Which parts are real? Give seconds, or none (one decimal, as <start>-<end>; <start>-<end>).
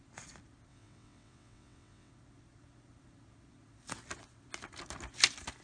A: 0.0-0.7; 2.1-5.6